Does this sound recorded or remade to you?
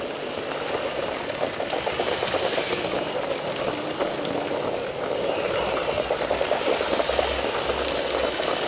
recorded